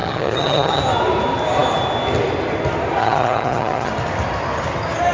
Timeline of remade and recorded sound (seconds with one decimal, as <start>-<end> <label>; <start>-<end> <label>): 0.0-0.8 remade; 0.8-3.0 recorded; 3.0-3.9 remade; 3.9-5.1 recorded